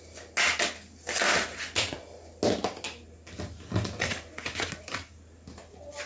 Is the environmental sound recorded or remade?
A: recorded